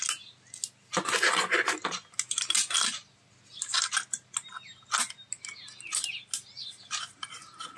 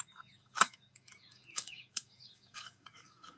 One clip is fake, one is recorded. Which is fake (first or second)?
second